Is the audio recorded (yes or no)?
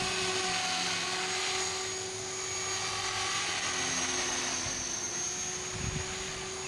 yes